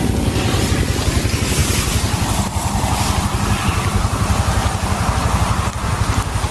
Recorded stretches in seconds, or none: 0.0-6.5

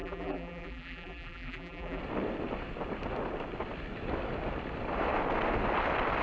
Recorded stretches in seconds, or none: 2.0-6.2

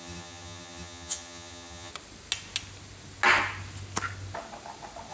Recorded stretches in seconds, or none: 1.9-5.1

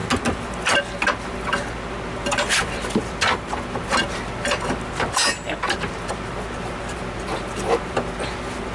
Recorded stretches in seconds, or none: 0.0-8.7